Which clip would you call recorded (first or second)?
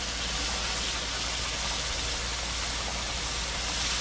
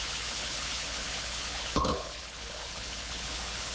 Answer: first